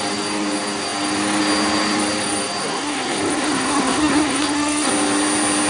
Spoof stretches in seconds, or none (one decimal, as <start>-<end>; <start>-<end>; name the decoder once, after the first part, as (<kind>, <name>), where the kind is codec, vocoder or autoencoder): 2.6-4.9 (codec, SNAC)